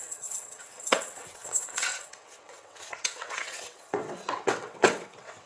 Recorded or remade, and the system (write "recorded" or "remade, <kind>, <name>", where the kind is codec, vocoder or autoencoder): remade, vocoder, WaveNeXt